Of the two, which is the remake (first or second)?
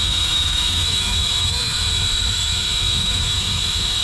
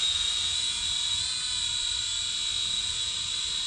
first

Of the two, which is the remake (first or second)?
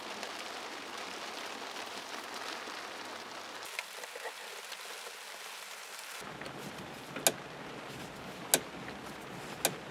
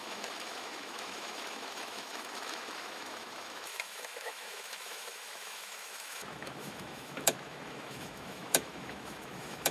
second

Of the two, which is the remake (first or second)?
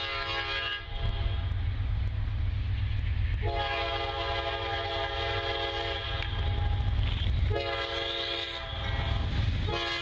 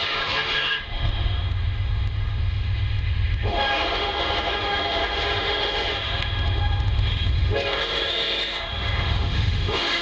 second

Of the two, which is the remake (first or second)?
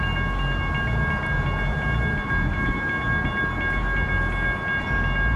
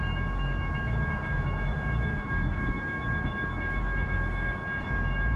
second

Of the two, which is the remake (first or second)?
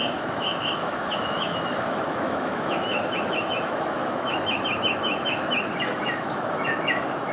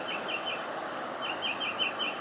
first